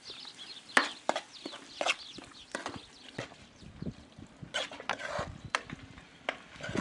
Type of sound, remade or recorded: recorded